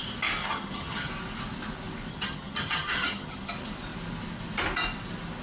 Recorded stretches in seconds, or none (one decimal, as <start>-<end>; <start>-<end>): 0.0-0.4; 1.1-2.1; 3.5-5.4